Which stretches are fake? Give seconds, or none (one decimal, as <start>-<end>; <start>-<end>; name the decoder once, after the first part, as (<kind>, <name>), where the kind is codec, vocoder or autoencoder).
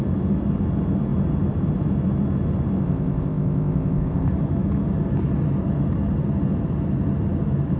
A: 2.8-4.3 (codec, ZipCodec)